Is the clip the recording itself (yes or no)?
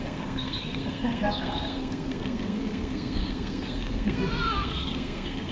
no